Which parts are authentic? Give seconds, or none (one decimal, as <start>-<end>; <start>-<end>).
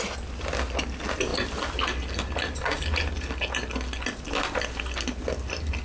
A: 0.0-5.8